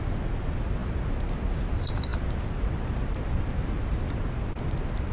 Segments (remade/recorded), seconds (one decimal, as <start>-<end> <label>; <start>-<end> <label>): 0.0-5.1 recorded